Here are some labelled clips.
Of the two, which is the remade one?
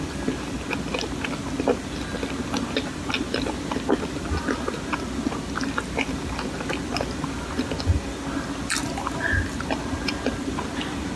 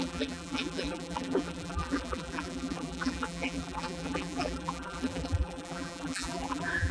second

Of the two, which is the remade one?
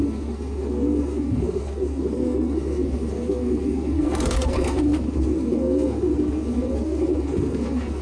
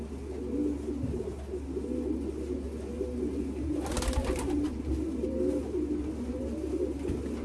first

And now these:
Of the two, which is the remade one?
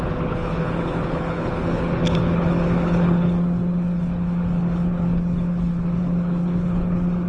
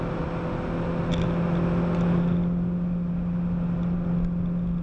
first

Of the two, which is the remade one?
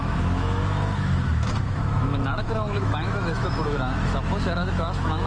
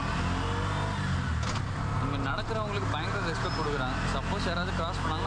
first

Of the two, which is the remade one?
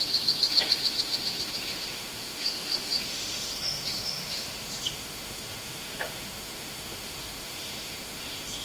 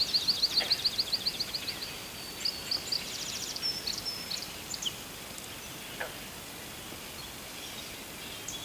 first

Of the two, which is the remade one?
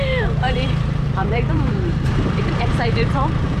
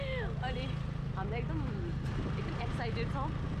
first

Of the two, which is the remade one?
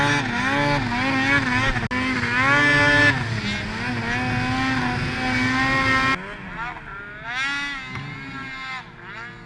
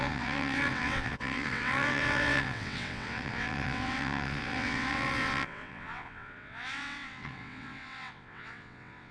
second